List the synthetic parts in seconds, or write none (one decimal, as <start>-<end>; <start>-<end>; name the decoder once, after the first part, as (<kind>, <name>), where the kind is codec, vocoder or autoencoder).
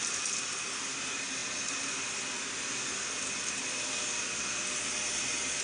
none